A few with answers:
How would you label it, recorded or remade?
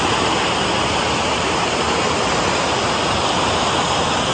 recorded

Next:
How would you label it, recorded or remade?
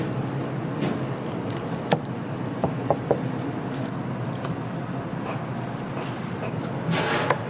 recorded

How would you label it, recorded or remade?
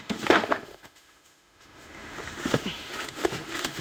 remade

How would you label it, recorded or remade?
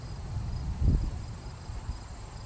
recorded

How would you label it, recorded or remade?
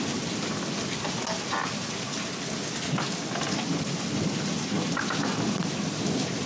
recorded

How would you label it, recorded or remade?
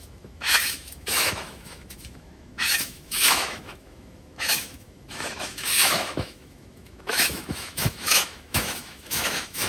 remade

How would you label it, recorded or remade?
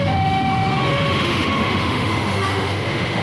remade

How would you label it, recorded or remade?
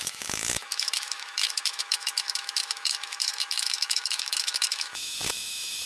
remade